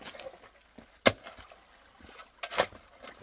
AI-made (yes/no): no